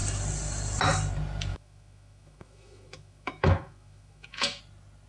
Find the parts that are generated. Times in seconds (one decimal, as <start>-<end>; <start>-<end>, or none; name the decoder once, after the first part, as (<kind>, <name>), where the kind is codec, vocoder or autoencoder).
1.5-4.6 (autoencoder, DAC-VAE)